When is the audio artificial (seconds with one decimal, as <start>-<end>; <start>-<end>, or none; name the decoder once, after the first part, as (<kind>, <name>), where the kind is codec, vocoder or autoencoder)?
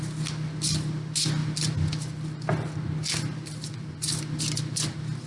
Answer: none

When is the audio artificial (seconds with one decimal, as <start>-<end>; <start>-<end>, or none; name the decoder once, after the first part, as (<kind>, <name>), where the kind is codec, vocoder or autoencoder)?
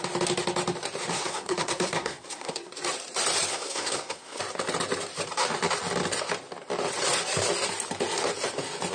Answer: 1.1-2.7 (codec, SNAC); 3.5-4.4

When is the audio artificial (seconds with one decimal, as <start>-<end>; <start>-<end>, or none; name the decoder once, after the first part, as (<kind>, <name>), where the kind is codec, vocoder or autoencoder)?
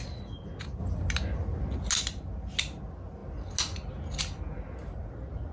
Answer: none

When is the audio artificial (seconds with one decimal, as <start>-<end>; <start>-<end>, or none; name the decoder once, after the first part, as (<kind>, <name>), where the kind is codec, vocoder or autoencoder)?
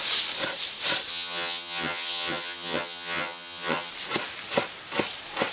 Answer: 1.1-3.9 (vocoder, HiFi-GAN)